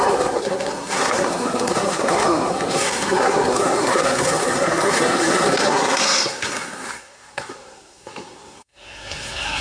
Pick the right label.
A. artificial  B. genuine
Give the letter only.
A